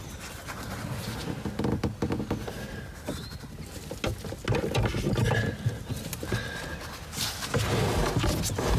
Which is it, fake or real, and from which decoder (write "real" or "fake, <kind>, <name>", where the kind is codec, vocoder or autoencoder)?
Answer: real